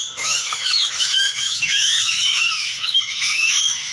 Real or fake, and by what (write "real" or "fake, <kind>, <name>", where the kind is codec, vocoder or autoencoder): fake, autoencoder, DAC-VAE